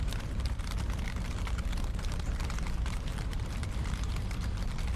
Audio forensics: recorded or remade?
remade